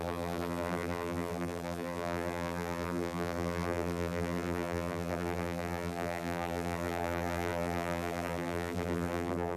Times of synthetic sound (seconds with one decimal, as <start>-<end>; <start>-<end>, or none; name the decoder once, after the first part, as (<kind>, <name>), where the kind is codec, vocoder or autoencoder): 0.0-9.6 (vocoder, BigVGAN v2)